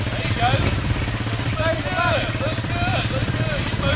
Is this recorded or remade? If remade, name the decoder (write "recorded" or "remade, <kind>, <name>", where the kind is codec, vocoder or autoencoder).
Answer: recorded